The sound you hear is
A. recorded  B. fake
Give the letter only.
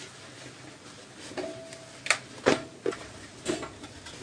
A